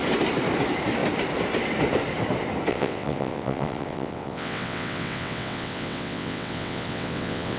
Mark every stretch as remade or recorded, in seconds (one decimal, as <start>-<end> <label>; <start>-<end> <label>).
0.0-2.7 recorded; 2.7-7.6 remade